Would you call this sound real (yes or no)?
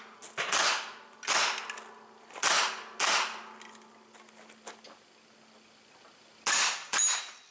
yes